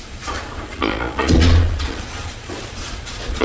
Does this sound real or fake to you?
fake